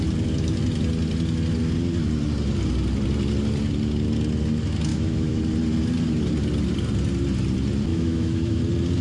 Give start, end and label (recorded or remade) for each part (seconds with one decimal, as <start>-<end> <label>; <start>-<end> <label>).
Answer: 0.0-4.9 recorded; 4.9-5.4 remade; 5.4-7.9 recorded; 7.9-8.6 remade; 8.6-9.0 recorded